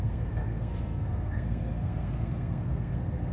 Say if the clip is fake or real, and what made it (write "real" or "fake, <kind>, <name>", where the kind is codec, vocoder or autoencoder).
fake, codec, SNAC